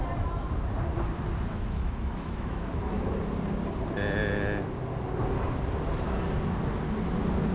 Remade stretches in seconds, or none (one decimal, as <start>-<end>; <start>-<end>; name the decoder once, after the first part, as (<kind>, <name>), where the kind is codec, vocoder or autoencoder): 1.5-3.1 (autoencoder, DAC-VAE)